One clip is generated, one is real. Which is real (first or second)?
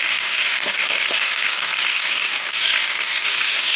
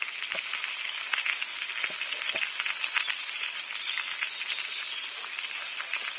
second